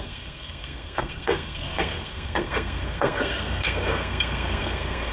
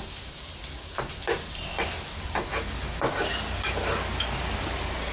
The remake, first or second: first